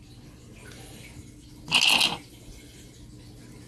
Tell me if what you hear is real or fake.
real